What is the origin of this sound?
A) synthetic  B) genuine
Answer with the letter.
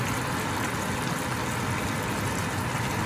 B